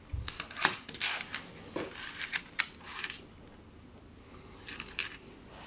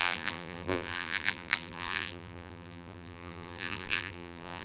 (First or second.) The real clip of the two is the first